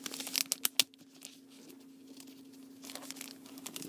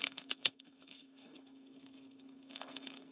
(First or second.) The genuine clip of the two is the first